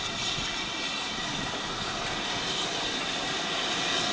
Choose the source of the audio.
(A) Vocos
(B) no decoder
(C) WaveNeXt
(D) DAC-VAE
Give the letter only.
B